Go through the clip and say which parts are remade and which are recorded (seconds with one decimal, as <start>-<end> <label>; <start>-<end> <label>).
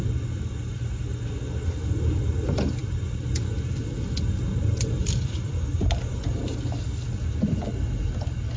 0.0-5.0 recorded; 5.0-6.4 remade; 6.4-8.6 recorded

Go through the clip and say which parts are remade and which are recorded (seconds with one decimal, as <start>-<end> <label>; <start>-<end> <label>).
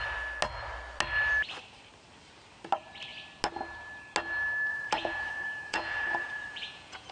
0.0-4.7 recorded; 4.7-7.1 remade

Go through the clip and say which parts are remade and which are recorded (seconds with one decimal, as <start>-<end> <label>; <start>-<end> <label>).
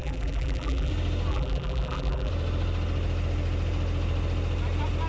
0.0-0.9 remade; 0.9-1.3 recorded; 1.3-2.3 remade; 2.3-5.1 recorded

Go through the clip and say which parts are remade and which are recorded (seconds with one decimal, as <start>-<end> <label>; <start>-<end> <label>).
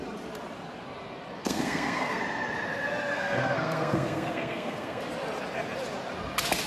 0.0-1.4 recorded; 1.4-2.2 remade; 2.2-3.1 recorded; 3.1-5.0 remade; 5.0-6.7 recorded